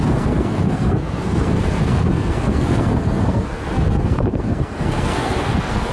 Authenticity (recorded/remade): remade